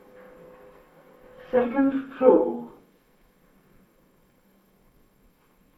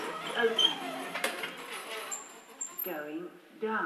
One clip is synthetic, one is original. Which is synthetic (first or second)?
first